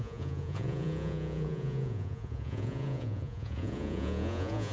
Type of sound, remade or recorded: remade